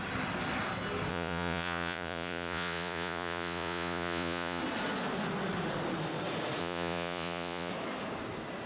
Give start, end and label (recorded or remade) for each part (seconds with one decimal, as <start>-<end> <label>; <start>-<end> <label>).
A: 0.0-1.1 recorded; 1.1-4.6 remade; 4.6-6.6 recorded; 6.6-7.7 remade; 7.7-8.7 recorded